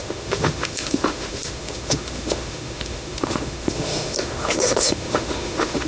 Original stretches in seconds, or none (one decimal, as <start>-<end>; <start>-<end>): none